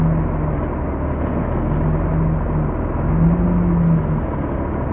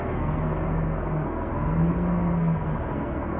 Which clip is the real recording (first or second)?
first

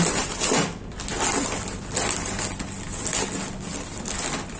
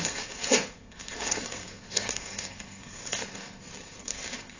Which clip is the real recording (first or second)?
first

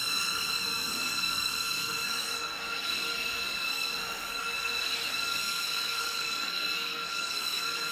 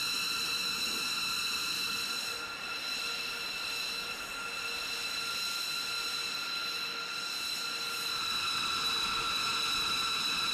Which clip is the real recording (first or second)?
second